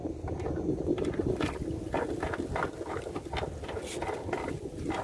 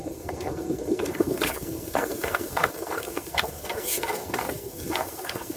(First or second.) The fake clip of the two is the second